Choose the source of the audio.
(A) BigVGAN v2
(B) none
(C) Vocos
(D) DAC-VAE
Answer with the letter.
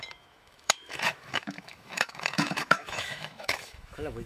D